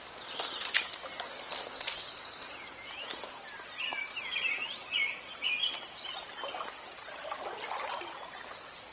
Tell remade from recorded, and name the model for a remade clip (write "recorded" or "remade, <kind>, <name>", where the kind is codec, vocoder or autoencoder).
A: recorded